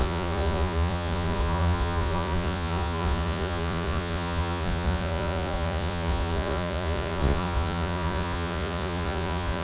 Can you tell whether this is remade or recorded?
remade